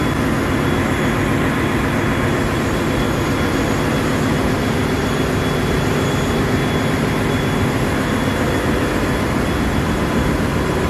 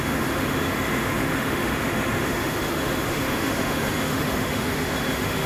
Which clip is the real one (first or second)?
first